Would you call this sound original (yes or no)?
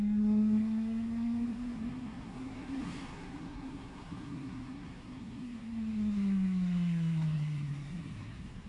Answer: no